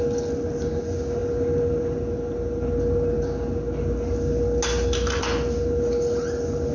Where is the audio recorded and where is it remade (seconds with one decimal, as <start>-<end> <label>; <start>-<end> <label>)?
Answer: 0.0-6.7 recorded

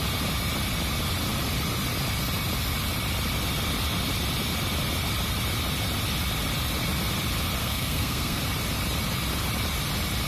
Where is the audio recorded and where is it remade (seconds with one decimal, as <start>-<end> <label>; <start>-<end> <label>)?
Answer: 0.0-7.6 recorded; 7.6-8.4 remade; 8.4-10.3 recorded

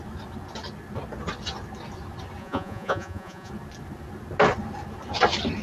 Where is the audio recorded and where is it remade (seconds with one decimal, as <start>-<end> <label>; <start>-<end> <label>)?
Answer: 0.0-2.4 recorded; 2.4-3.5 remade; 3.5-5.6 recorded